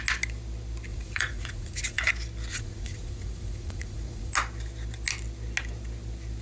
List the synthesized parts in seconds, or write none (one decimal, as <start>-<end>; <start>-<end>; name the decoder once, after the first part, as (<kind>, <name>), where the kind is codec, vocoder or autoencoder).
0.9-2.1 (vocoder, Vocos); 2.5-4.3